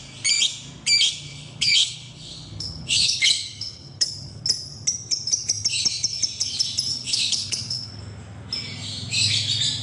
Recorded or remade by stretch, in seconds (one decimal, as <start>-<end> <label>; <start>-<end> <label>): 0.0-1.3 recorded; 1.3-4.4 remade; 4.4-6.9 recorded; 6.9-7.9 remade; 7.9-9.8 recorded